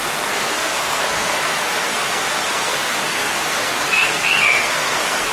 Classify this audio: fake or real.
fake